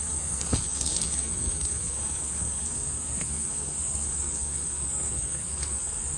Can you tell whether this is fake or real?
fake